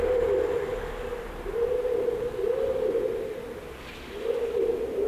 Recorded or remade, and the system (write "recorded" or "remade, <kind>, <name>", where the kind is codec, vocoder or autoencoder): recorded